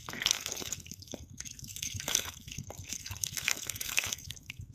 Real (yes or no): no